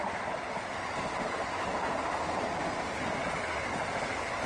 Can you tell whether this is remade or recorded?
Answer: recorded